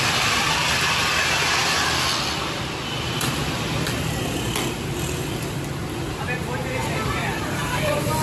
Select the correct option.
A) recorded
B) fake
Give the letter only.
A